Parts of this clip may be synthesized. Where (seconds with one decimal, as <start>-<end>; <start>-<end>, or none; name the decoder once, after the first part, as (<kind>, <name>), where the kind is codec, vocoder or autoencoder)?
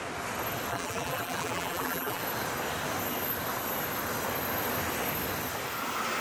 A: 0.7-2.2 (vocoder, BigVGAN v2)